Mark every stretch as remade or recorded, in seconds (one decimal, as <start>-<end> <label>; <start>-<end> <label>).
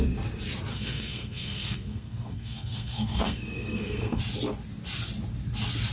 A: 0.0-0.7 recorded; 0.7-4.2 remade; 4.2-5.9 recorded